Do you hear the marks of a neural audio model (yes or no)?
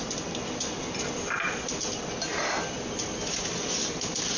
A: no